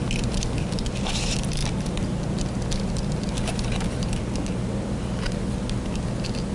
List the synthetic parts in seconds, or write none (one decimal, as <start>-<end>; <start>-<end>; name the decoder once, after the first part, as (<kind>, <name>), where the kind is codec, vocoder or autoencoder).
none

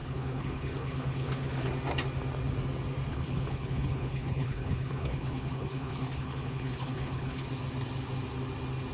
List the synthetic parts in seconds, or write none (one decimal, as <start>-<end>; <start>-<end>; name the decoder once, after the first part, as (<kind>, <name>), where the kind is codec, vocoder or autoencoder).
0.0-1.7 (codec, HILCodec); 3.1-7.5

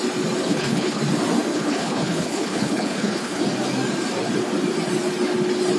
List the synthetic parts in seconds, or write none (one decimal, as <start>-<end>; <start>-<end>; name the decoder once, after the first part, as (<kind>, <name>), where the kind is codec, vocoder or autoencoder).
0.4-1.0 (codec, HILCodec); 1.5-3.4

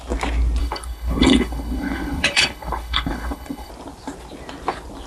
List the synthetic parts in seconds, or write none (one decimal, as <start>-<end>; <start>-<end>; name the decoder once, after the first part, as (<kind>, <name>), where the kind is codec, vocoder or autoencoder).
0.6-3.7 (codec, HILCodec)